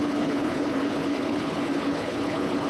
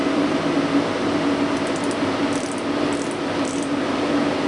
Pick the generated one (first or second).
first